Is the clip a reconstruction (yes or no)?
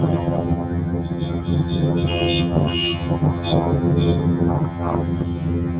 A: yes